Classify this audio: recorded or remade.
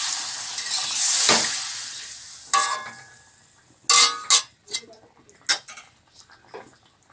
recorded